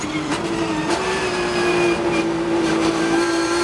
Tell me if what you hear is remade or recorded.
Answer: remade